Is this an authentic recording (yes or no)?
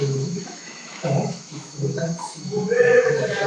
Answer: no